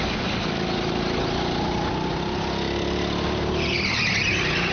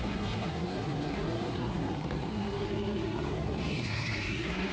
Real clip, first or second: first